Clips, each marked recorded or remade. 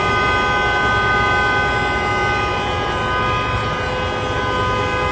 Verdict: recorded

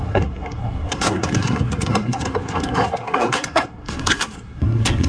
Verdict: remade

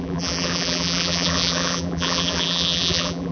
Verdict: remade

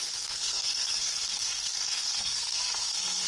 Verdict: remade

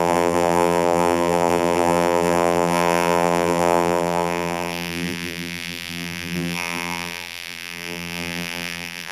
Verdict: remade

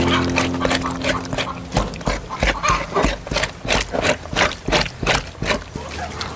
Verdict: recorded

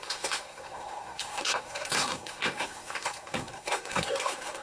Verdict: remade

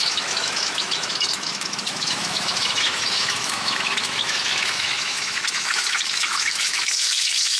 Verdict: remade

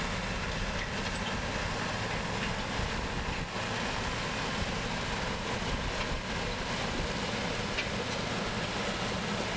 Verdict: recorded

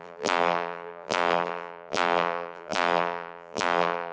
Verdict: remade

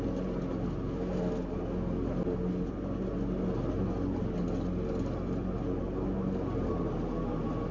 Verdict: recorded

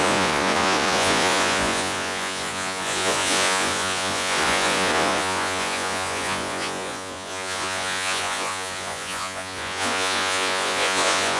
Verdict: remade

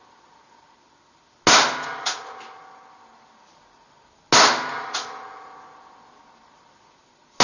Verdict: recorded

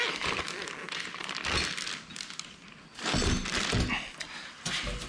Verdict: recorded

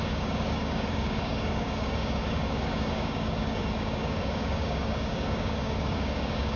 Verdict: remade